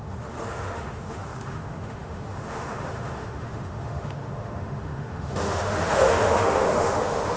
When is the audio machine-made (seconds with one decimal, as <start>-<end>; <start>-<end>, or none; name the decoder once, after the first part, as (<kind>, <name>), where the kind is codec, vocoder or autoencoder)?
0.0-7.4 (autoencoder, DAC-VAE)